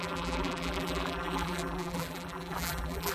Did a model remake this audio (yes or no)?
yes